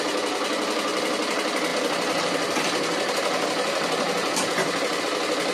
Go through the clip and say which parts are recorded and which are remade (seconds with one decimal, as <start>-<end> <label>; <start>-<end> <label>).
0.0-1.7 recorded; 1.7-5.0 remade; 5.0-5.5 recorded